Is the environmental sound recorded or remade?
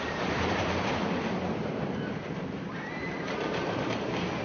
remade